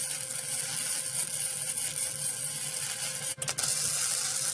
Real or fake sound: real